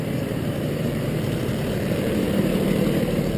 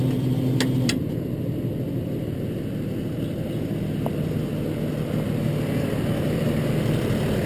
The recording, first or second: second